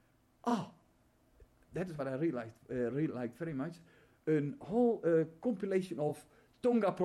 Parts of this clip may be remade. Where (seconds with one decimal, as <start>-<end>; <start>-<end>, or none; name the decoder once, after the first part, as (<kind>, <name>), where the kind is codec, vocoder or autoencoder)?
0.5-2.0 (vocoder, Vocos); 6.1-7.0